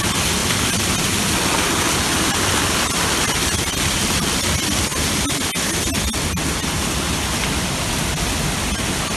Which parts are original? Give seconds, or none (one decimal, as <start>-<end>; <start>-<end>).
0.0-9.2